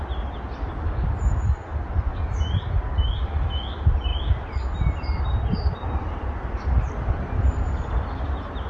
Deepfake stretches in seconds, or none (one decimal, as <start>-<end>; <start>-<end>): none